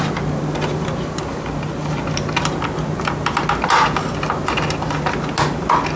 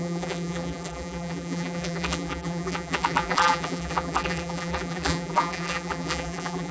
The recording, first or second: first